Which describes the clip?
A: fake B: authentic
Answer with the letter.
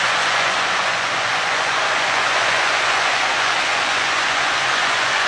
A